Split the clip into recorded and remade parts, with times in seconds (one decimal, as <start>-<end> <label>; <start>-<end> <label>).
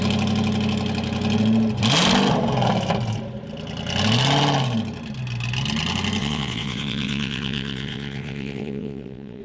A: 0.0-6.2 recorded; 6.2-9.4 remade